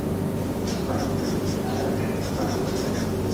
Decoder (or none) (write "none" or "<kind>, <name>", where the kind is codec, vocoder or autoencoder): none